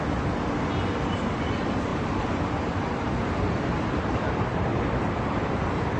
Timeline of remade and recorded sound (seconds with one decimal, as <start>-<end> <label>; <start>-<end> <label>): 0.0-6.0 recorded

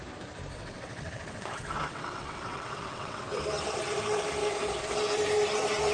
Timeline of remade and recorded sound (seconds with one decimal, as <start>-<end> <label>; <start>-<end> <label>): 0.0-0.5 recorded; 0.5-3.2 remade; 3.2-5.9 recorded

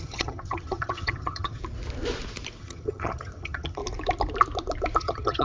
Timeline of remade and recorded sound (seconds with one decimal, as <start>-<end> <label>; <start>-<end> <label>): 0.0-1.6 remade; 1.6-2.6 recorded; 2.6-3.8 remade; 3.8-5.0 recorded; 5.0-5.4 remade

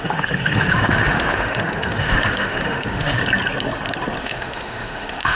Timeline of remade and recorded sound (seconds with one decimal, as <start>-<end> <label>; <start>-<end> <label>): 0.0-3.2 remade; 3.2-4.2 recorded; 4.2-5.3 remade

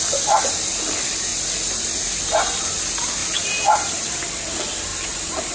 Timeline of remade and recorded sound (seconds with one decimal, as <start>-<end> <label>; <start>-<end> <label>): 0.0-3.2 recorded; 3.2-4.0 remade; 4.0-4.9 recorded; 4.9-5.5 remade

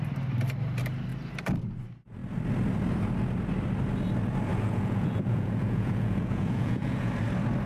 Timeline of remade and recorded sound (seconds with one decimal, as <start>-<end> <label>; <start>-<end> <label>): 0.0-4.5 recorded; 4.5-7.1 remade; 7.1-7.7 recorded